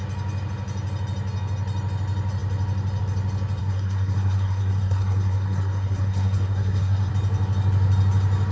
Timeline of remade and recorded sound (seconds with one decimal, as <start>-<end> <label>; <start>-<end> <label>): 0.0-3.6 recorded; 3.6-7.1 remade; 7.1-8.5 recorded